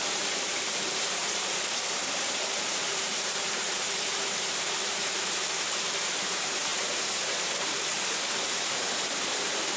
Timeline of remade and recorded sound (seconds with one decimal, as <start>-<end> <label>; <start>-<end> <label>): 0.0-9.8 remade

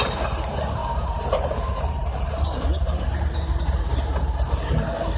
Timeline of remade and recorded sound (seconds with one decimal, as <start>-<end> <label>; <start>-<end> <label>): 0.0-0.8 recorded; 0.8-3.9 remade; 3.9-5.2 recorded

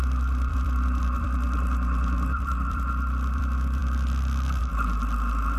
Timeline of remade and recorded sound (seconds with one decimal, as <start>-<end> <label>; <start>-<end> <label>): 0.0-0.5 recorded; 0.5-3.4 remade; 3.4-3.8 recorded; 3.8-4.6 remade; 4.6-5.6 recorded

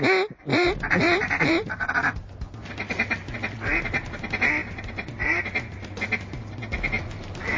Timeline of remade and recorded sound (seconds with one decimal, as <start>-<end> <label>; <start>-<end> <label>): 0.0-0.5 recorded; 0.5-1.9 remade; 1.9-4.6 recorded; 4.6-5.9 remade; 5.9-7.6 recorded

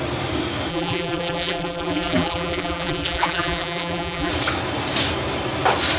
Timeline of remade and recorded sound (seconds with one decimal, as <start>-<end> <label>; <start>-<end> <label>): 0.0-0.7 recorded; 0.7-4.3 remade; 4.3-6.0 recorded

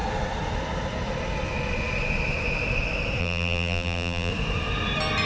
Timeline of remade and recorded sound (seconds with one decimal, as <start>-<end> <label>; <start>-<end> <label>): 0.0-3.2 recorded; 3.2-4.3 remade; 4.3-5.3 recorded